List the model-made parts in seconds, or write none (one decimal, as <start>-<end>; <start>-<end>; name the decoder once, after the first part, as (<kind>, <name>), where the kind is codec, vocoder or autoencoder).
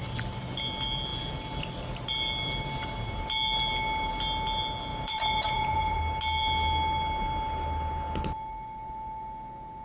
4.9-6.0 (vocoder, Vocos)